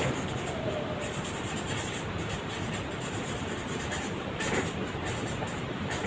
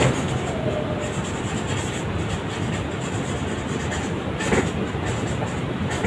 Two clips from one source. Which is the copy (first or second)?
first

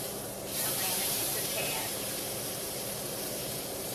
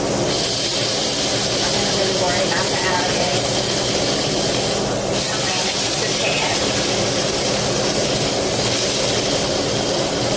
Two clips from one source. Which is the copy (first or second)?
first